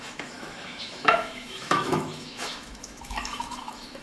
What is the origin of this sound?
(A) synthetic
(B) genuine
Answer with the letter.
A